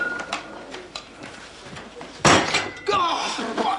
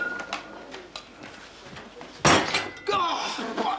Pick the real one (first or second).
second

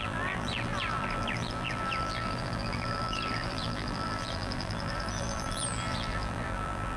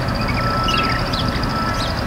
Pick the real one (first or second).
second